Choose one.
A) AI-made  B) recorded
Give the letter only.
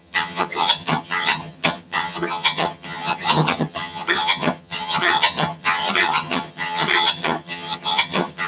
A